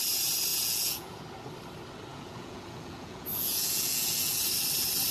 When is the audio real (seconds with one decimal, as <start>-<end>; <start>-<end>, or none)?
0.0-0.5; 1.2-2.1; 4.4-5.1